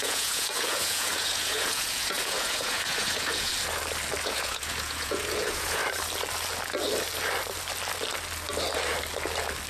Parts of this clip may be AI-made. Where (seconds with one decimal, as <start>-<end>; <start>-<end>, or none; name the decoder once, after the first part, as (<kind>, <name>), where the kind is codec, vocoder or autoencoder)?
0.0-3.5 (vocoder, Vocos); 4.2-5.8